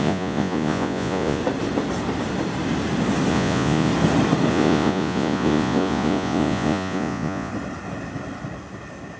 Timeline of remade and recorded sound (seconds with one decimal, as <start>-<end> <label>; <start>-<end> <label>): 0.0-1.4 remade; 1.4-3.3 recorded; 3.3-3.9 remade; 3.9-4.5 recorded; 4.5-7.5 remade; 7.5-9.2 recorded